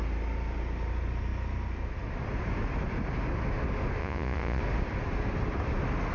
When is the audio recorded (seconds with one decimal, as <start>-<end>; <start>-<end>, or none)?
0.0-4.0; 4.6-6.1